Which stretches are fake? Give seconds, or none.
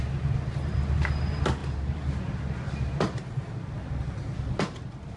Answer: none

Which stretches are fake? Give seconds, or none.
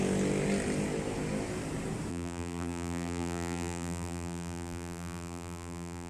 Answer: 2.1-6.1 (vocoder, BigVGAN v2)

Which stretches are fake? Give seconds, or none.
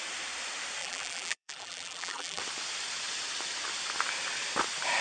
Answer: 0.8-2.4 (vocoder, BigVGAN v2)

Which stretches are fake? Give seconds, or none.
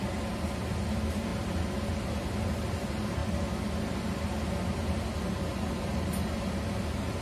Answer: none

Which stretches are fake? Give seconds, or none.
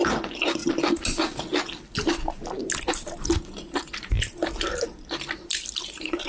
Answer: 0.0-0.6 (vocoder, BigVGAN v2); 2.8-4.4; 5.8-6.3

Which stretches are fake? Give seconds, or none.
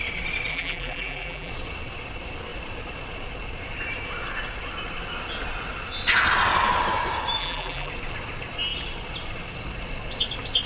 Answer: 0.5-1.5 (vocoder, BigVGAN v2); 7.4-7.9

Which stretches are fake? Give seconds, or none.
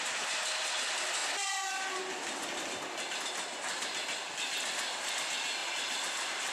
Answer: 5.6-6.5 (vocoder, BigVGAN v2)